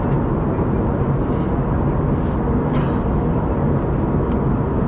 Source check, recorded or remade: recorded